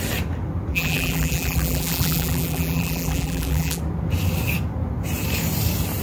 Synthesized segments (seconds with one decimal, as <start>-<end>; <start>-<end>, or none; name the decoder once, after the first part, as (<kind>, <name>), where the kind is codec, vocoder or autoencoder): 0.7-3.8 (vocoder, BigVGAN v2)